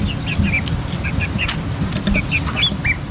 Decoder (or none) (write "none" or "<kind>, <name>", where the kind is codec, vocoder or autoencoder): none